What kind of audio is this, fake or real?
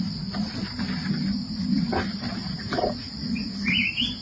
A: real